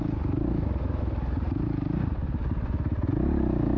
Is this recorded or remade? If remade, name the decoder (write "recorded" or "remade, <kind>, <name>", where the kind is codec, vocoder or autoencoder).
recorded